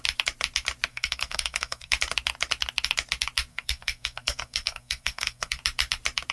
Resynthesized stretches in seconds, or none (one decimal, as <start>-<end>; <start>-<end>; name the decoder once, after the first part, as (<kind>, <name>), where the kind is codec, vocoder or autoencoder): 0.9-1.9 (codec, SNAC); 3.5-5.6